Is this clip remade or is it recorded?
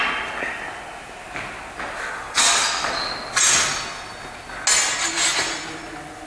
recorded